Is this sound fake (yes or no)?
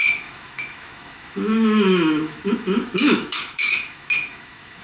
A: yes